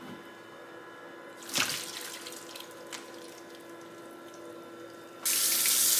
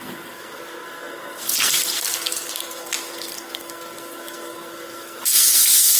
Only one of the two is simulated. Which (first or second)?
second